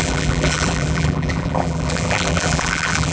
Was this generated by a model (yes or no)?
yes